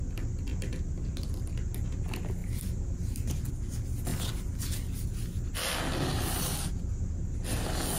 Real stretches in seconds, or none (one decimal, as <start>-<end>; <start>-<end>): 0.0-0.5; 1.5-2.4; 3.5-8.0